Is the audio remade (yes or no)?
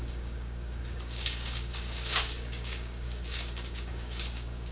yes